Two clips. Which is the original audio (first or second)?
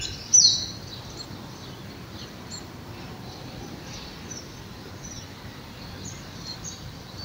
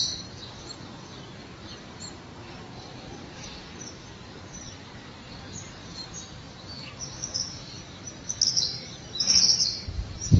second